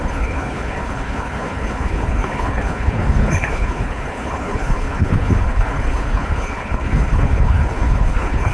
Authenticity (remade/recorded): remade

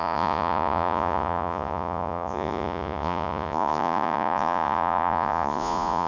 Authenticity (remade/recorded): remade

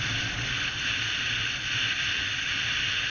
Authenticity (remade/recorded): recorded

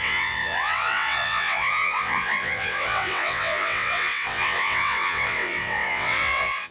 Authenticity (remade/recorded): remade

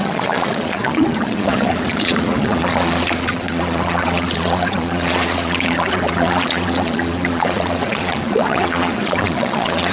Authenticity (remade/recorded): remade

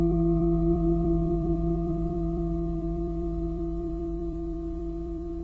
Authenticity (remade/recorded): remade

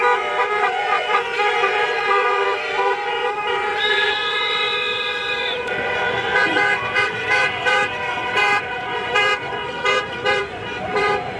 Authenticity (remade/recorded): remade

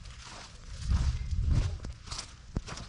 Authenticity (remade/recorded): remade